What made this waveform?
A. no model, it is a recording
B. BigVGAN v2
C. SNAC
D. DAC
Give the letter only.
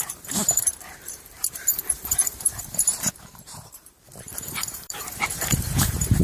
B